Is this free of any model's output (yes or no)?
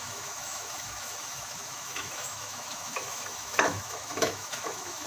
no